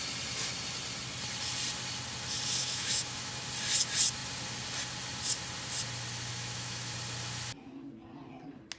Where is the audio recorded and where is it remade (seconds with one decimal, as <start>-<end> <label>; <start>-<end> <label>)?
0.0-2.6 recorded; 2.6-3.3 remade; 3.3-6.3 recorded; 6.3-6.9 remade; 6.9-8.8 recorded